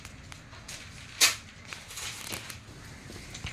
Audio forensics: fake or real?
real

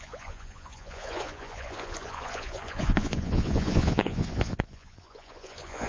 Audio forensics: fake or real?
fake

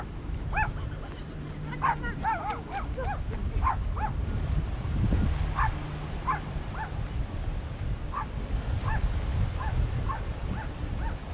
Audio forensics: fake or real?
real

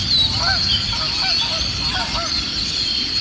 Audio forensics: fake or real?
real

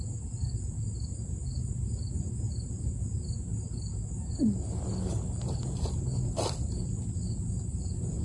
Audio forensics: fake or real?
real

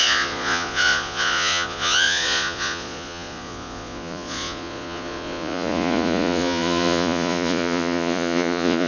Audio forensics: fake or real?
fake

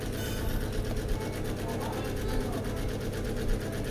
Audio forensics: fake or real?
real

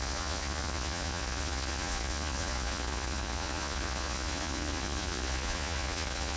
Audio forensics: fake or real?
fake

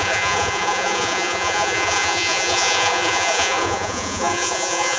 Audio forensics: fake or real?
fake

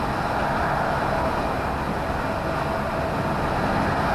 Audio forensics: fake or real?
real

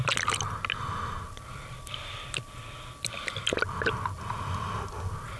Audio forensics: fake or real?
real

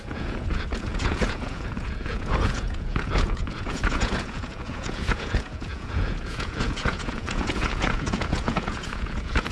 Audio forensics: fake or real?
fake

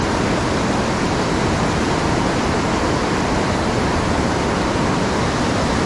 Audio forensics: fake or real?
real